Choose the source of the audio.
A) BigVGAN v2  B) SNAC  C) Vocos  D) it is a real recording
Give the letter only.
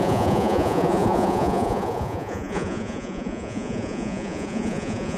C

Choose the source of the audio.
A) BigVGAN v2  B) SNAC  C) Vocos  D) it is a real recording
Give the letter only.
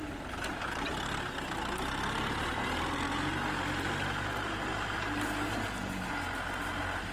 D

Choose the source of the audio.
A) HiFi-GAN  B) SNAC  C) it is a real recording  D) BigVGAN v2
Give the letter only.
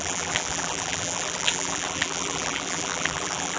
D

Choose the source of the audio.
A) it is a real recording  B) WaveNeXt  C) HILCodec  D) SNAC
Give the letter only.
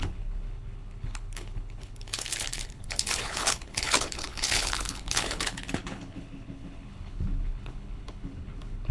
C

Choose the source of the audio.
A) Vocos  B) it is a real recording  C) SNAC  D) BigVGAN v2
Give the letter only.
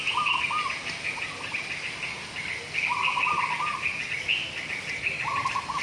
B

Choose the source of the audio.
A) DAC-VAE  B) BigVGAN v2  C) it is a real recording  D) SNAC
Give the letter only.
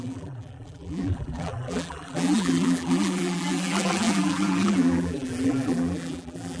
B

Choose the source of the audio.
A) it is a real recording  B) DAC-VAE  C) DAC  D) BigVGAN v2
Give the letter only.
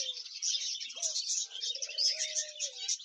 A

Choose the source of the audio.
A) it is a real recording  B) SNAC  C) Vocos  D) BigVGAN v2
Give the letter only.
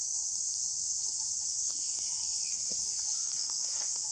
B